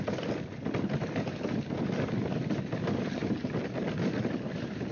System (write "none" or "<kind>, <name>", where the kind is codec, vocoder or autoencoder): none